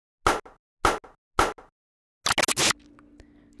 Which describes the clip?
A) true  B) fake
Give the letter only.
A